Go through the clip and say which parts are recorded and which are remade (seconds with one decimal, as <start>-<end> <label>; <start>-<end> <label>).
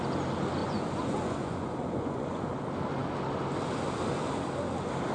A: 0.0-0.6 recorded; 0.6-2.4 remade; 2.4-5.1 recorded